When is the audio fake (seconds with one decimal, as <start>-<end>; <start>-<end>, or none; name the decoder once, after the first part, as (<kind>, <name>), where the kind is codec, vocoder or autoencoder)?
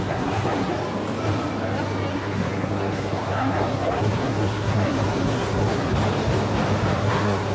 0.0-0.7 (codec, SNAC); 2.1-5.9; 6.9-7.5